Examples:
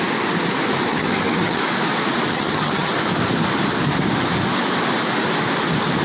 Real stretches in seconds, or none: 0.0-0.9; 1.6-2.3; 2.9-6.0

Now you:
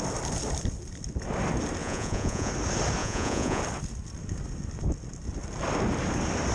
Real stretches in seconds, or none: 0.0-1.8; 2.5-3.0; 3.6-6.5